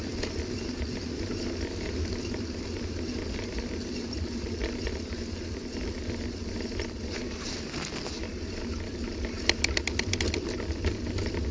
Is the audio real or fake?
real